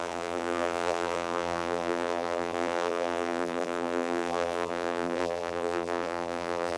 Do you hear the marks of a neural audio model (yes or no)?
yes